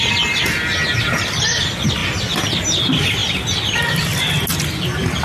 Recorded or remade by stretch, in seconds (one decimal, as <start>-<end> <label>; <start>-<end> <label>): 0.0-5.2 recorded